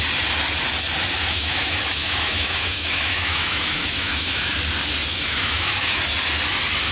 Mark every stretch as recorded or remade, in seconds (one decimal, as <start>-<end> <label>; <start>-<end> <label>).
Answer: 0.0-1.2 recorded; 1.2-4.6 remade; 4.6-5.1 recorded; 5.1-6.0 remade; 6.0-6.9 recorded